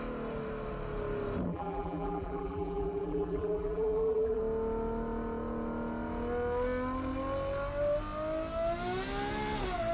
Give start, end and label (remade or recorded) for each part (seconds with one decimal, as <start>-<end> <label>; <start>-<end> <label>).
0.0-1.5 recorded; 1.5-4.4 remade; 4.4-9.9 recorded